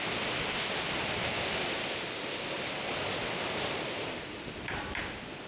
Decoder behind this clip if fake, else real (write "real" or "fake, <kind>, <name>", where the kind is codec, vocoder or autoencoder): fake, vocoder, BigVGAN v2